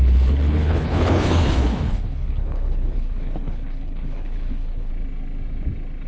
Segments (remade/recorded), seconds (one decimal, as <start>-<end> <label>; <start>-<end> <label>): 0.0-4.9 remade; 4.9-6.1 recorded